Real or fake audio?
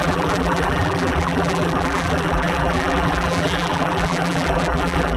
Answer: fake